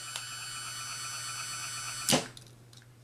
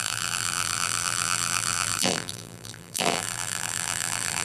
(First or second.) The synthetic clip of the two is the second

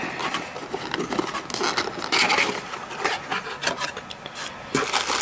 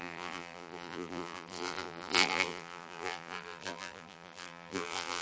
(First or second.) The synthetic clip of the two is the second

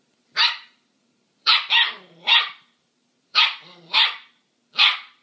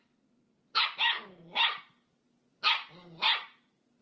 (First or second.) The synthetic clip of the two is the first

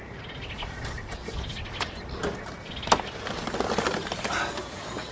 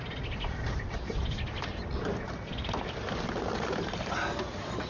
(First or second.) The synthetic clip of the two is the second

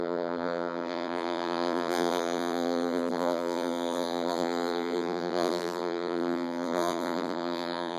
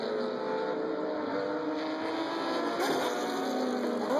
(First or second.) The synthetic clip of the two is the first